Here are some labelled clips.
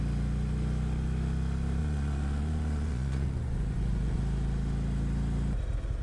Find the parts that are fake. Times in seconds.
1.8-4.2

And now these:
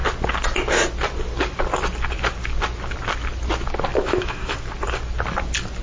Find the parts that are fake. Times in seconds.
3.9-4.7

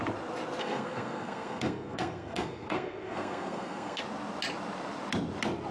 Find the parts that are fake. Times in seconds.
0.6-4.0

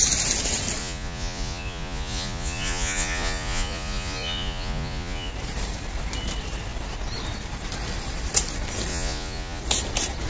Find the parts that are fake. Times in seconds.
0.8-5.3; 8.9-9.6

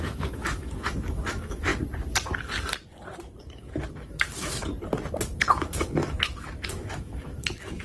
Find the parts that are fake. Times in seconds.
0.0-1.7; 3.4-4.7; 5.4-7.8

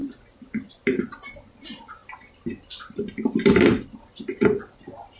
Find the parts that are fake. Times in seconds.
none